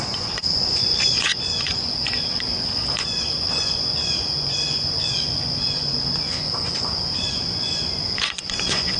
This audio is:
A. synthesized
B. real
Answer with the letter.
A